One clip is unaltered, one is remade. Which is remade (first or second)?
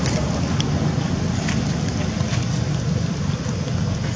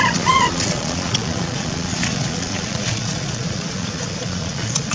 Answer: second